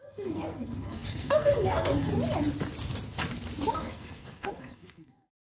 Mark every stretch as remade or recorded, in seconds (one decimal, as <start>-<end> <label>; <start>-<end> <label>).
0.0-2.1 remade; 2.1-3.7 recorded; 3.7-5.5 remade